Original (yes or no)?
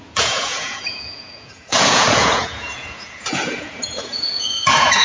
no